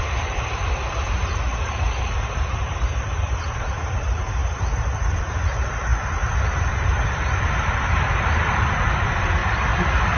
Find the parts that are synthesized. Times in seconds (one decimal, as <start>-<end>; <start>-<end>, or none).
0.0-9.4